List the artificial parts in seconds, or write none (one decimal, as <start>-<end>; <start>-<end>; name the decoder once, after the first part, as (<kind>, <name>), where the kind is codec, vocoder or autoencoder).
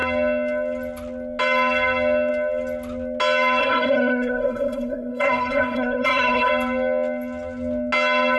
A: 3.6-6.5 (codec, SNAC)